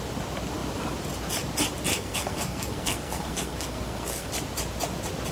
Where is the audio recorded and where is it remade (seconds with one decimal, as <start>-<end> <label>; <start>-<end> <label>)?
0.0-1.9 recorded; 1.9-4.3 remade; 4.3-5.3 recorded